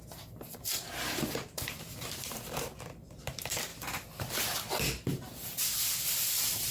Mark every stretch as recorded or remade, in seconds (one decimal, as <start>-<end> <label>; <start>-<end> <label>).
0.0-3.7 remade; 3.7-4.3 recorded; 4.3-6.7 remade